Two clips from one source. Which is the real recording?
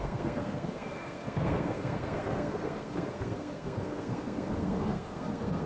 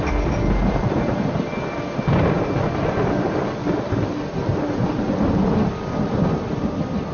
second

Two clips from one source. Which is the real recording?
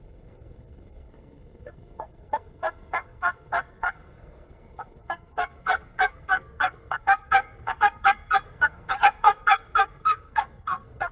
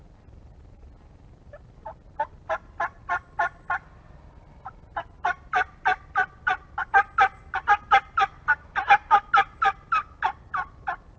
second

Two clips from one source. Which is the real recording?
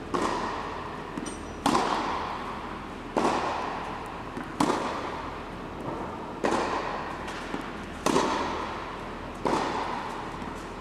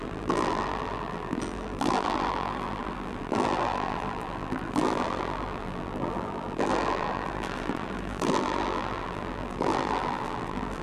first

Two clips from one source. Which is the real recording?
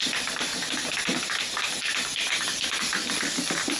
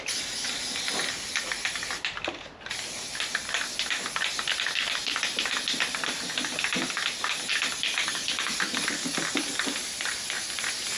second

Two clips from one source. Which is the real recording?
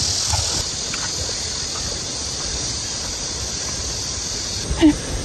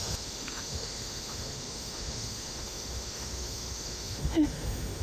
first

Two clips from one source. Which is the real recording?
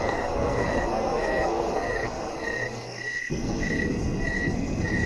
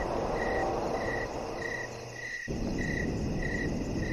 second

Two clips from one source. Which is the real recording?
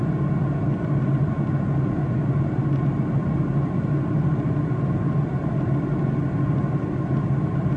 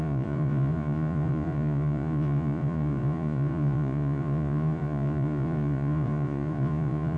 first